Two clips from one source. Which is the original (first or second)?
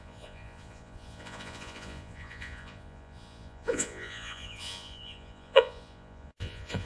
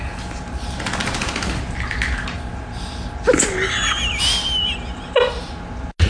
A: second